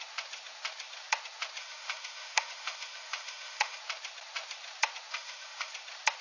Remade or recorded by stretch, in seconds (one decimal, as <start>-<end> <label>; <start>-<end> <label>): 0.0-1.6 recorded; 1.6-3.8 remade; 3.8-5.1 recorded; 5.1-5.7 remade; 5.7-6.2 recorded